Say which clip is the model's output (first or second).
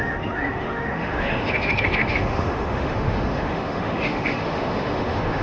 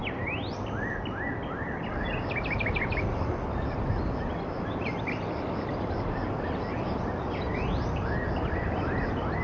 first